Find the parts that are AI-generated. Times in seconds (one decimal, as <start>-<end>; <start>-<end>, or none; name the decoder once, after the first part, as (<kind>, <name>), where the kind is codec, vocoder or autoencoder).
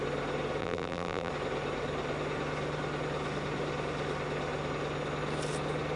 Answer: 0.6-1.3 (vocoder, BigVGAN v2)